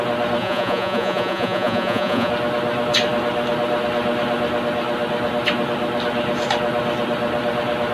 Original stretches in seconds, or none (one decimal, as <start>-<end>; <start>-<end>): 0.0-0.4; 2.3-7.9